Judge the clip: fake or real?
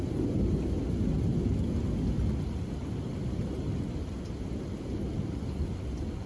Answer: real